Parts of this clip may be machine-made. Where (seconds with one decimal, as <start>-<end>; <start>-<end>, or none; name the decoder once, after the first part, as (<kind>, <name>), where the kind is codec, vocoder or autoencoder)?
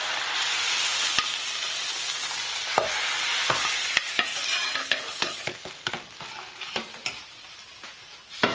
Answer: 4.8-5.9 (codec, HILCodec)